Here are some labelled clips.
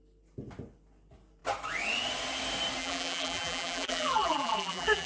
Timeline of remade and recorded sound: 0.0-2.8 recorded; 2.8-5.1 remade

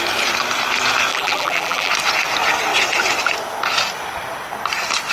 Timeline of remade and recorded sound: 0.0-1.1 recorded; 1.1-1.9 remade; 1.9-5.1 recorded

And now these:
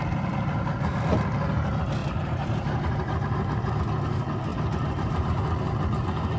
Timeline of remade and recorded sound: 0.0-2.0 recorded; 2.0-3.7 remade; 3.7-4.5 recorded; 4.5-5.4 remade; 5.4-6.4 recorded